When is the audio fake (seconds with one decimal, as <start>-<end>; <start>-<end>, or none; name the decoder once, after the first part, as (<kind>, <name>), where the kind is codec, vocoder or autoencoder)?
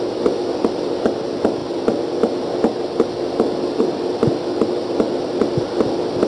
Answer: none